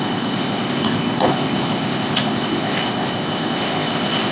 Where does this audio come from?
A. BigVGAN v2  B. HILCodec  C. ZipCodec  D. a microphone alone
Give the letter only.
C